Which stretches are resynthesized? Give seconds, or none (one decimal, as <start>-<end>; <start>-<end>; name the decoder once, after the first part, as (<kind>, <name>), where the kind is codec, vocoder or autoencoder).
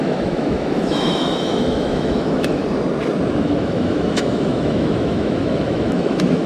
0.0-2.6 (autoencoder, DAC-VAE); 3.4-6.5